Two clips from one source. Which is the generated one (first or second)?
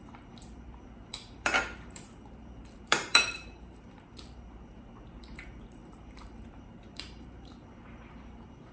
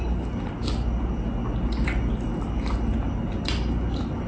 first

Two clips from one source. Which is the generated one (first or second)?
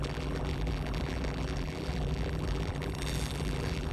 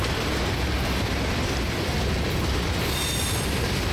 first